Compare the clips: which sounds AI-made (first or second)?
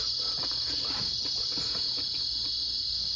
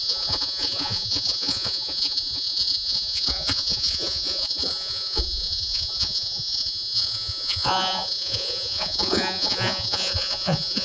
second